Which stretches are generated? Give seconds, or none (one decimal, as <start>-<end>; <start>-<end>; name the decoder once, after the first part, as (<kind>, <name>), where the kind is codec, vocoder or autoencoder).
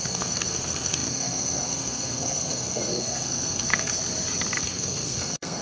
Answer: 0.0-4.0 (codec, SNAC); 4.6-5.6